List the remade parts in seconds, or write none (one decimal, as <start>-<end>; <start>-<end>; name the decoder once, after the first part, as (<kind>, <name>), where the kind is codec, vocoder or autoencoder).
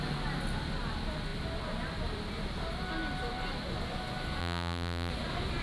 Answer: 4.4-5.1 (vocoder, BigVGAN v2)